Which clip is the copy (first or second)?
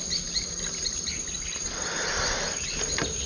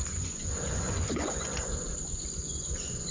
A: second